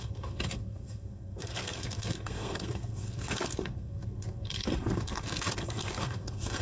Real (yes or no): no